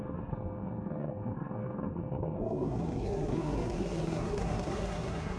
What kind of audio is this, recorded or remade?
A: remade